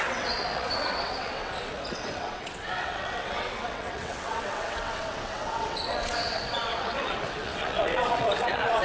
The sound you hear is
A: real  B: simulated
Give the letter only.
B